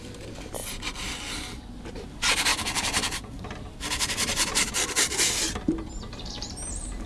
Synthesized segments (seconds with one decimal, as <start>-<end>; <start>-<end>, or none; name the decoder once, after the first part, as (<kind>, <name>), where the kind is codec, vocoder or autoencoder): 0.0-0.6 (vocoder, BigVGAN v2); 1.9-7.1